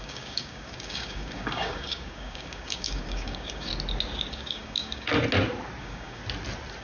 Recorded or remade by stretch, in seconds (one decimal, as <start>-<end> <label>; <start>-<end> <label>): 0.0-3.7 remade; 3.7-4.3 recorded; 4.3-5.1 remade; 5.1-5.8 recorded; 5.8-6.2 remade; 6.2-6.8 recorded